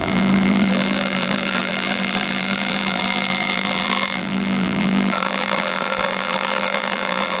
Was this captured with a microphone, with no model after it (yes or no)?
no